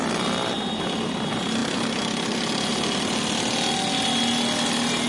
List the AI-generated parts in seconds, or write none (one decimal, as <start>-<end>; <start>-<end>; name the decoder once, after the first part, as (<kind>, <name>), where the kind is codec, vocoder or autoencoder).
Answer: none